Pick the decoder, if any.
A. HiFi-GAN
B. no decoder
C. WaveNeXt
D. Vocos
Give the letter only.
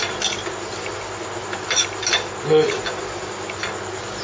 B